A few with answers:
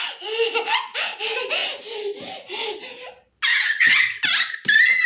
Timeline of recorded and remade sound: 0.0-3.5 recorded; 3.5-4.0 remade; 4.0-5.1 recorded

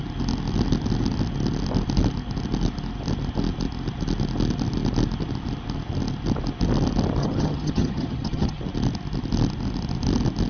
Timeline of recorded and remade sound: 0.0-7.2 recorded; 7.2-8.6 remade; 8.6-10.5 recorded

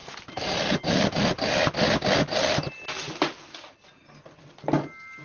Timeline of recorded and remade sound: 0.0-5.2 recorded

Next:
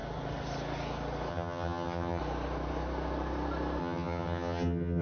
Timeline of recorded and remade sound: 0.0-1.3 recorded; 1.3-2.2 remade; 2.2-3.8 recorded; 3.8-5.0 remade